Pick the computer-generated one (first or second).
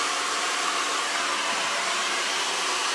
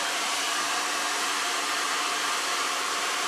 second